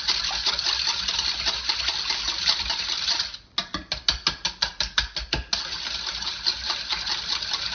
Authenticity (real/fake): real